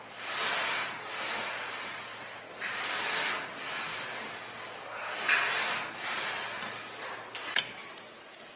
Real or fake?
real